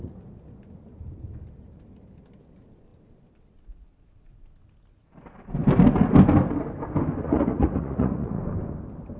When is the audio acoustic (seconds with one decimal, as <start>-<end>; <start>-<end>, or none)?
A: 0.0-7.2; 8.4-9.2